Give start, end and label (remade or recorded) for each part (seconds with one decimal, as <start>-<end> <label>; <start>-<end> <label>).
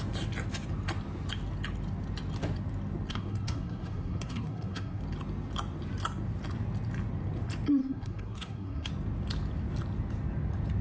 0.0-3.1 recorded; 3.1-5.0 remade; 5.0-7.8 recorded; 7.8-8.9 remade; 8.9-10.8 recorded